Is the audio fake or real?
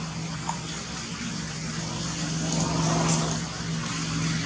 real